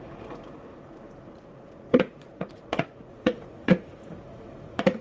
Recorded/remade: remade